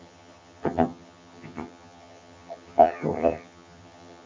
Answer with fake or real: fake